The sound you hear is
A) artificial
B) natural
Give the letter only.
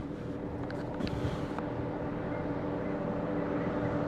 A